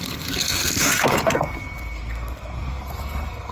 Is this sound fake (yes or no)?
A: yes